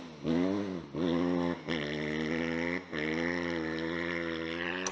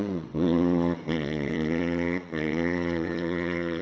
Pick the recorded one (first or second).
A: first